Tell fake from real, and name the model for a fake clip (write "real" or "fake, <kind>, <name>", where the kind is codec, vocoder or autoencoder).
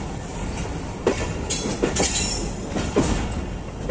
real